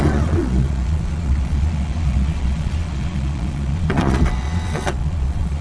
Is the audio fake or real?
fake